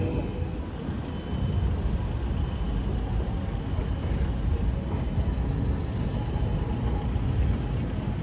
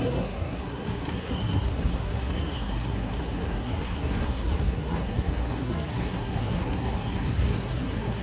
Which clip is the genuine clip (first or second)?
first